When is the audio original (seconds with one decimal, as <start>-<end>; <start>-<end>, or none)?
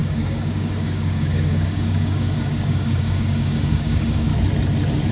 4.3-5.1